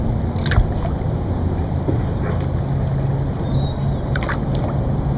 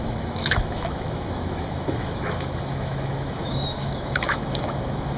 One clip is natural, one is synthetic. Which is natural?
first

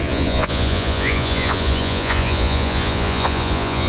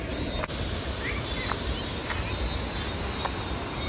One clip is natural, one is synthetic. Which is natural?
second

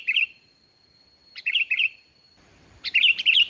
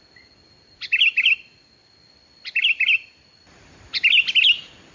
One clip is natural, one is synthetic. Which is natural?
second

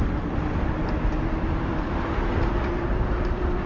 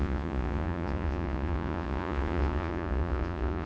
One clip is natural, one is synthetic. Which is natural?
first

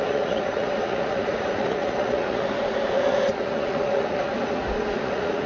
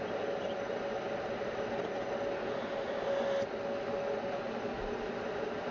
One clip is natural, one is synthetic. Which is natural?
second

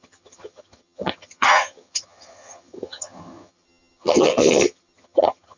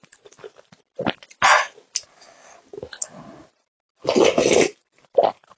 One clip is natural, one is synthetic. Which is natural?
second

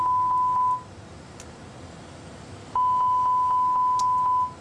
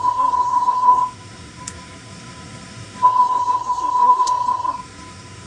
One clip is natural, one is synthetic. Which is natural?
first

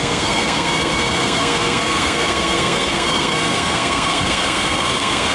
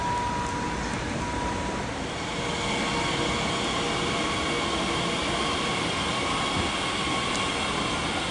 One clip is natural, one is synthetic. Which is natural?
second